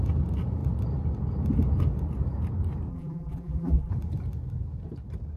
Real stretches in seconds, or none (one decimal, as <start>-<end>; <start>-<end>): 0.0-2.9; 3.9-5.4